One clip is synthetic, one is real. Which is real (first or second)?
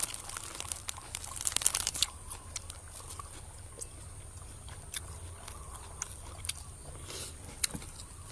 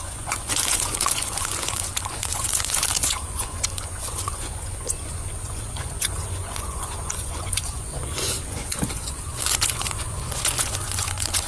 first